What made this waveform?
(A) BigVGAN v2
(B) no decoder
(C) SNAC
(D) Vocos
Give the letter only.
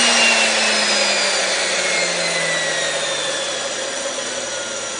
B